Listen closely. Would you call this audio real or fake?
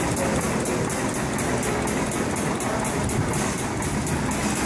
real